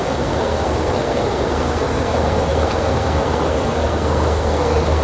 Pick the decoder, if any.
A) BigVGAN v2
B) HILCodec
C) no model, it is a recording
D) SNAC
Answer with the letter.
D